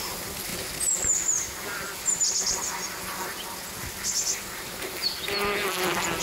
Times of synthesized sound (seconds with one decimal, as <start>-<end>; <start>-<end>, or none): none